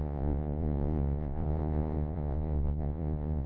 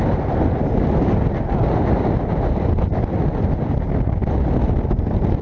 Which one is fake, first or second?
first